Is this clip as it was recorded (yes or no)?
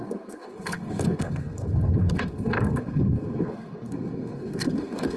no